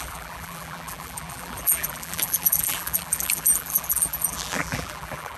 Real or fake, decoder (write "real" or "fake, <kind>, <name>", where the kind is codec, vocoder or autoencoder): fake, vocoder, BigVGAN v2